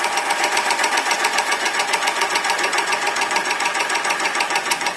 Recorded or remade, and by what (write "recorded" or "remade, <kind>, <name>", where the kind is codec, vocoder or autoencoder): remade, vocoder, Vocos